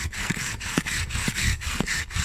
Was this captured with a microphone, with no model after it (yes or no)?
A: no